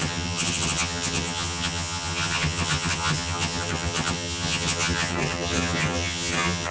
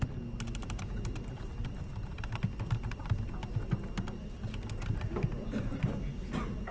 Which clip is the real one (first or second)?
second